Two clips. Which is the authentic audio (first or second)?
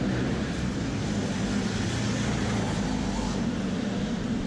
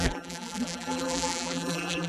first